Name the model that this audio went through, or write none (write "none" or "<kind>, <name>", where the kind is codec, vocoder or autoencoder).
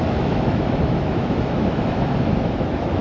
autoencoder, DAC-VAE